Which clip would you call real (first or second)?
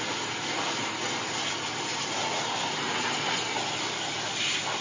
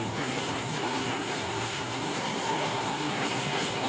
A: first